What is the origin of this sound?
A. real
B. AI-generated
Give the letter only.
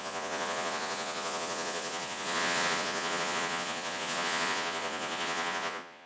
B